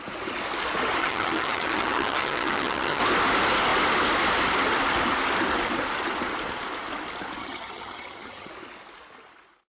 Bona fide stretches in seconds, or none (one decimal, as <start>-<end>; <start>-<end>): 0.0-1.0; 3.0-7.4; 8.5-9.8